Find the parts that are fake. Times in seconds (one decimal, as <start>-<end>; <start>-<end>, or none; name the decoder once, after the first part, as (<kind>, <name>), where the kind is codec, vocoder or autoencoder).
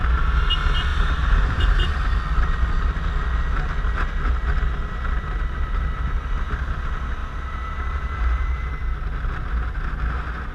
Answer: 0.9-2.2 (vocoder, BigVGAN v2); 7.2-8.7